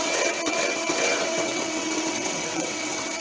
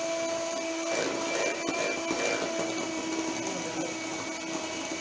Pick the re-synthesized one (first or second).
first